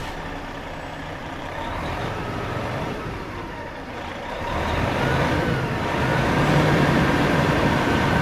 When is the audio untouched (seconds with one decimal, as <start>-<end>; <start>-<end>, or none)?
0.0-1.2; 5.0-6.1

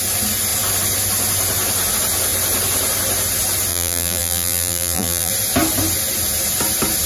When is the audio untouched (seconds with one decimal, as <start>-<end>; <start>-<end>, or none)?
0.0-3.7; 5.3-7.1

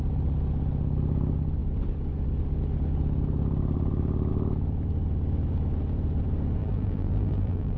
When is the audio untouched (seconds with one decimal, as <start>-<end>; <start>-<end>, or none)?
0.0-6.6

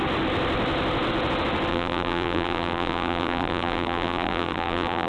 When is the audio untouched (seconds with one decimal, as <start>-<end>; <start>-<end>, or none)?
0.0-1.7

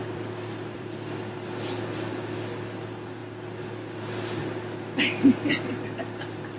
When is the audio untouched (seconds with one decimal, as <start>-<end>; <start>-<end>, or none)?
1.2-6.6

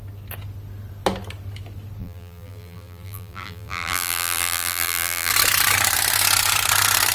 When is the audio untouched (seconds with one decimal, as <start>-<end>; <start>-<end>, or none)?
0.0-2.0; 5.3-7.1

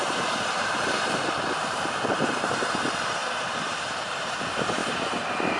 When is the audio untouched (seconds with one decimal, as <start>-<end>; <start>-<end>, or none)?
none

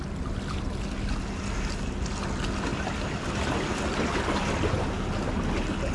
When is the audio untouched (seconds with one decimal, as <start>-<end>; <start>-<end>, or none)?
0.0-2.7; 3.3-5.9